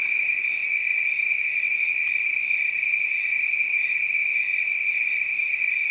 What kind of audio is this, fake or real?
real